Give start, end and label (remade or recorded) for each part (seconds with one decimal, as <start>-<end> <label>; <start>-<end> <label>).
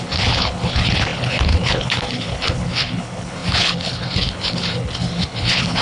0.0-5.8 remade